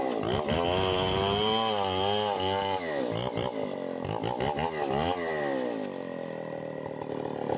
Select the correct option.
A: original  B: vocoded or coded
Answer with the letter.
A